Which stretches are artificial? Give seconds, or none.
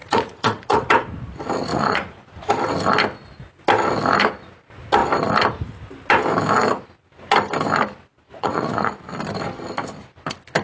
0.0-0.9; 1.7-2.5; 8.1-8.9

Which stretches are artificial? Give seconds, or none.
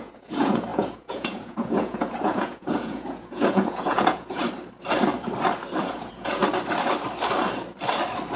0.0-4.4; 5.8-6.4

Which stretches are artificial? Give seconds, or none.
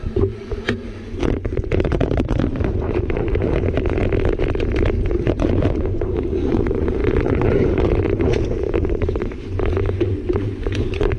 0.0-4.0; 5.1-11.2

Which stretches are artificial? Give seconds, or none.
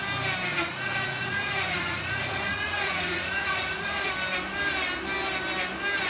0.5-4.1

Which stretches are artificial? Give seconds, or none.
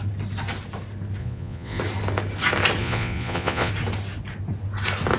1.2-1.8; 2.8-3.7